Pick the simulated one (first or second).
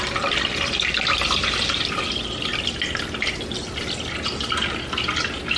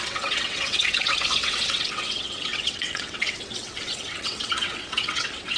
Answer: second